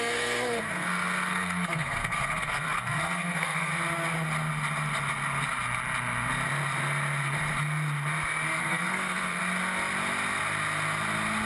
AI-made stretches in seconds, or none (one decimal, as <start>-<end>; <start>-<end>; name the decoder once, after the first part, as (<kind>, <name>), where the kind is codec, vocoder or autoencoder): 0.0-3.7 (codec, SNAC); 8.6-9.4